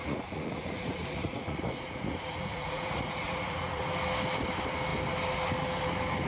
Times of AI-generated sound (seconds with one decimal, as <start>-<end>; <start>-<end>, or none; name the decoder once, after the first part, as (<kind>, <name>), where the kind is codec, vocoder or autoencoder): 0.0-3.8 (vocoder, Vocos)